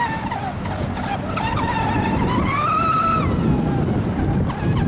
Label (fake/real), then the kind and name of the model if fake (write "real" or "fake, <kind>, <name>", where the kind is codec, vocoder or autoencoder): real